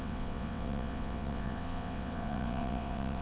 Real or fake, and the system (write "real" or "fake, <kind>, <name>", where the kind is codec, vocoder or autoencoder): fake, vocoder, WaveNeXt